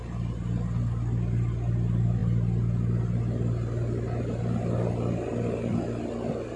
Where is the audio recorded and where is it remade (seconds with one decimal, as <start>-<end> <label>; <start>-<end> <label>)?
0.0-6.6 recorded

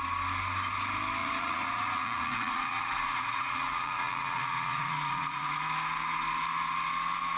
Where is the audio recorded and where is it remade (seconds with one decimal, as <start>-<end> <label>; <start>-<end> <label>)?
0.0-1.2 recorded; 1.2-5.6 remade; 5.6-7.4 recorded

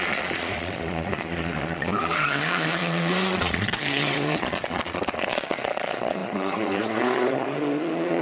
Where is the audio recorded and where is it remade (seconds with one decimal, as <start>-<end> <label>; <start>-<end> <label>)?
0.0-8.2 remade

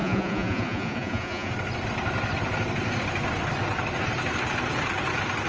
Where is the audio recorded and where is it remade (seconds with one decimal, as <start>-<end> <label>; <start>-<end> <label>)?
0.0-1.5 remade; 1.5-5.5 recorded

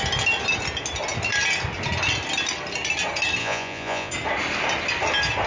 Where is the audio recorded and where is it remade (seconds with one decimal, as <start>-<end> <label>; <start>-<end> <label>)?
0.0-3.4 recorded; 3.4-4.1 remade; 4.1-5.5 recorded

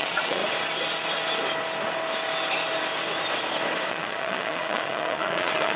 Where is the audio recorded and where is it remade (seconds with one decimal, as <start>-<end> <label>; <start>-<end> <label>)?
0.0-0.4 remade; 0.4-3.9 recorded; 3.9-5.8 remade

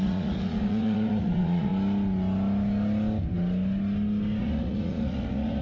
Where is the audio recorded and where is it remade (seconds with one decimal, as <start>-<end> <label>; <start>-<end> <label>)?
0.0-1.7 remade; 1.7-4.4 recorded; 4.4-5.6 remade

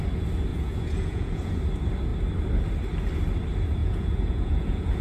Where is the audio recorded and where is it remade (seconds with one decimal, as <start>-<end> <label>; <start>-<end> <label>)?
0.0-0.5 recorded; 0.5-1.6 remade; 1.6-3.8 recorded; 3.8-5.0 remade